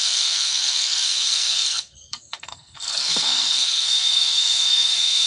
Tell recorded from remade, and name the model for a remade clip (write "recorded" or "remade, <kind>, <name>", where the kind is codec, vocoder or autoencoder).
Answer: remade, codec, SNAC